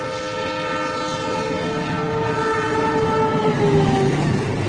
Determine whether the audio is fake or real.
real